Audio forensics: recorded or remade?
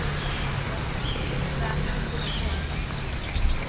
recorded